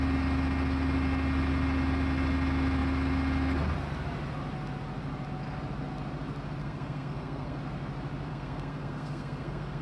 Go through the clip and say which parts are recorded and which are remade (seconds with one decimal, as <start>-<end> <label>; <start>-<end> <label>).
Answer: 0.0-6.6 recorded; 6.6-7.6 remade; 7.6-8.3 recorded; 8.3-9.8 remade